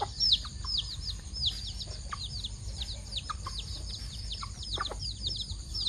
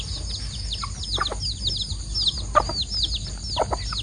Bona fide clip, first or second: second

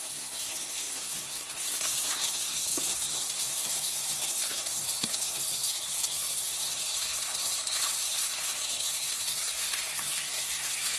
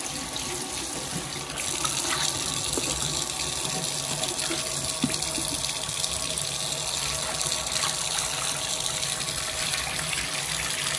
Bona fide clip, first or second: second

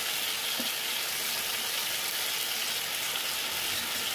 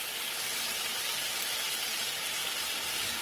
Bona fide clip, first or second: first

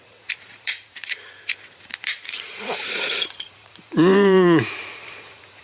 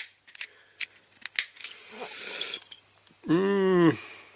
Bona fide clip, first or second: second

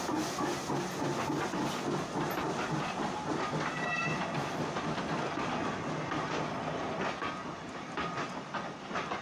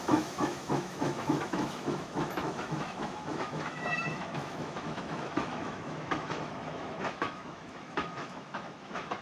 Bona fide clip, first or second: first